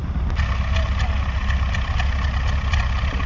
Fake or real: real